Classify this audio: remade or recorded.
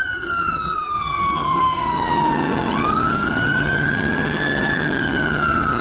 remade